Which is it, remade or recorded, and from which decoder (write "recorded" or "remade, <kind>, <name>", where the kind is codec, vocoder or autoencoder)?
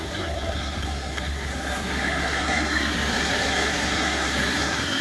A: remade, codec, SNAC